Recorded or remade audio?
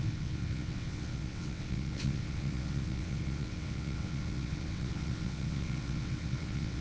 remade